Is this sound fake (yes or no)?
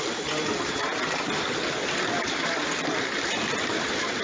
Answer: no